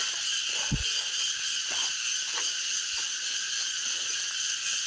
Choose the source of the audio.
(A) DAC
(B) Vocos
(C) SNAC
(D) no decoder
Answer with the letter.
D